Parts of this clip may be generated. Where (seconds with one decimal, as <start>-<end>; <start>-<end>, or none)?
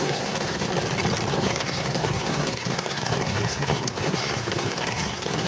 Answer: 0.0-0.7; 1.3-5.5